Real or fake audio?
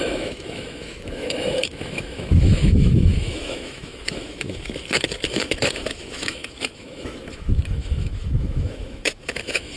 fake